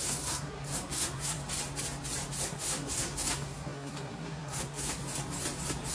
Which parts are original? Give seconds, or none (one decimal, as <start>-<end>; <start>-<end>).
1.4-2.4; 5.0-5.9